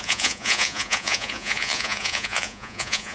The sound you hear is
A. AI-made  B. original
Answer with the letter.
A